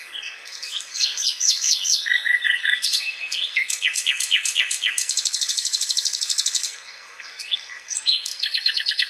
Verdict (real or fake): fake